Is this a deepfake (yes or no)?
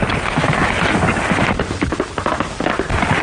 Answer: no